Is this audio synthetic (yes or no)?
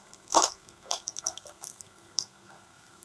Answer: yes